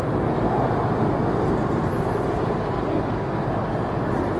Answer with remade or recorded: recorded